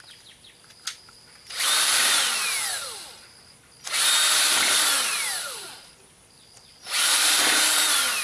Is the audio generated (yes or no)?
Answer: yes